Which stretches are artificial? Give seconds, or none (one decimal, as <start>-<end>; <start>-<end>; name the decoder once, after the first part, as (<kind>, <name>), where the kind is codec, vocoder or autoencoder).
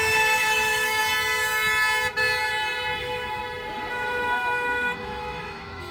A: 0.0-1.0 (autoencoder, DAC-VAE); 3.0-3.4; 3.9-5.9